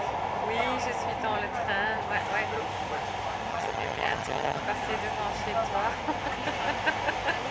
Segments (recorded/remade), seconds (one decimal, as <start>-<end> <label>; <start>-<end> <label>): 0.0-3.5 recorded; 3.5-4.6 remade; 4.6-7.5 recorded